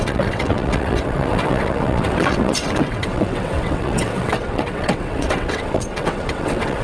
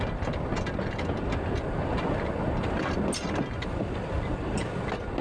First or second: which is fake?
first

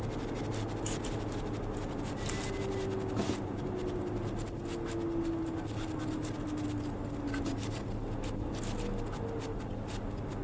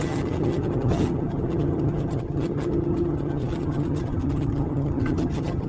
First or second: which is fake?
second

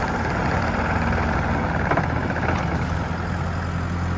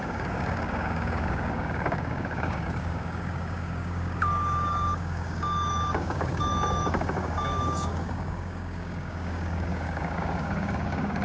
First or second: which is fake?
second